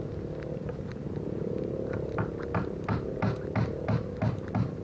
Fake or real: real